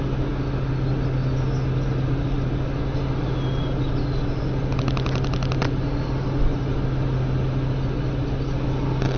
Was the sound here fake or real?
real